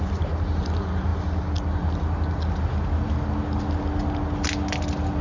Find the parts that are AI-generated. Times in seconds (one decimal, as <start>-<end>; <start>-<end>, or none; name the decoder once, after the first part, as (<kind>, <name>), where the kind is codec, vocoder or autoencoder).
none